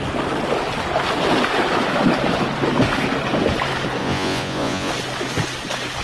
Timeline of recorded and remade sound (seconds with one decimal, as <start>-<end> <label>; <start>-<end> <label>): 0.0-4.0 recorded; 4.0-4.9 remade; 4.9-6.0 recorded